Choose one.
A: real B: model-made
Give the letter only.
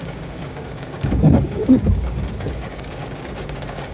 B